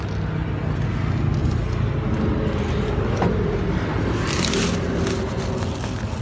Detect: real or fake real